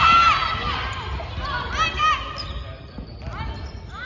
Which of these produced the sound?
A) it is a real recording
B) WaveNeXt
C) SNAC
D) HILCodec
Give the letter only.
A